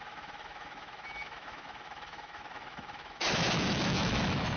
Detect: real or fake fake